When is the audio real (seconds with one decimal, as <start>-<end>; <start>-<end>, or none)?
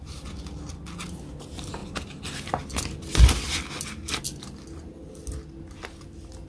0.0-6.5